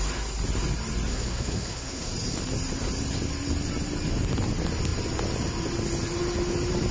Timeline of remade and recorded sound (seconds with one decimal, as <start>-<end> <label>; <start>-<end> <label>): 0.0-1.1 recorded; 1.1-2.1 remade; 2.1-6.9 recorded